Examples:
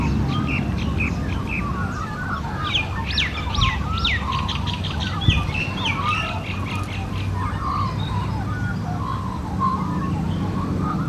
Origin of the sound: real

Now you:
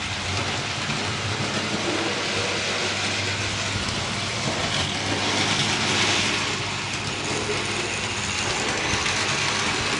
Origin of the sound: real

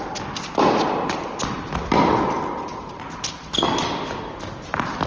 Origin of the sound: real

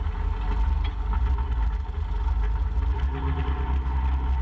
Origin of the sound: real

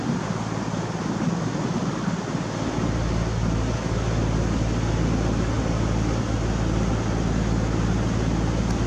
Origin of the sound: real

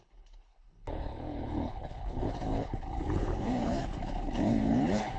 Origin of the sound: fake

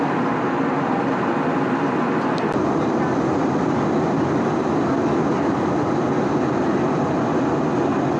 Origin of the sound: real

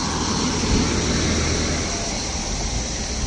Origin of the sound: real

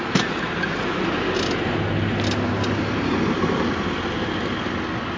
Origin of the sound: real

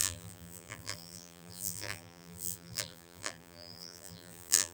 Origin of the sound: fake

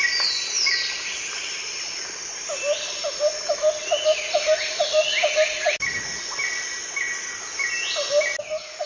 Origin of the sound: real